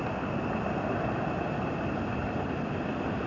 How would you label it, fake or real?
real